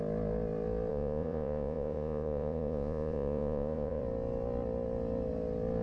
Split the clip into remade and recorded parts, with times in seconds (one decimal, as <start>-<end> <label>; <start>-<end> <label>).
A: 0.0-0.9 recorded; 0.9-4.0 remade; 4.0-5.8 recorded